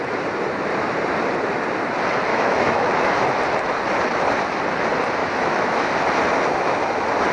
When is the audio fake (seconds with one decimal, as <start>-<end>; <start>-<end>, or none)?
2.3-3.4; 5.2-5.9